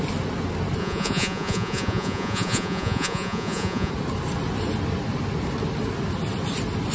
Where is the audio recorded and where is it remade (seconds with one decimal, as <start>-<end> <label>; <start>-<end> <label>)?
0.0-0.8 recorded; 0.8-3.9 remade; 3.9-6.9 recorded